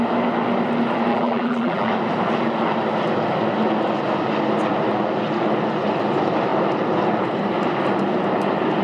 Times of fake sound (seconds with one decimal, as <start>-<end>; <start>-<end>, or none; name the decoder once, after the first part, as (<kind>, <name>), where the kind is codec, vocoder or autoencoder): 1.1-1.9 (vocoder, BigVGAN v2)